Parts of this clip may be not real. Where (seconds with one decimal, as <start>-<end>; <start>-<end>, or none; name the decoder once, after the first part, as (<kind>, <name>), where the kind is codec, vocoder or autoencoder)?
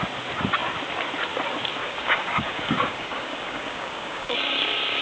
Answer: 1.8-5.0 (codec, DAC)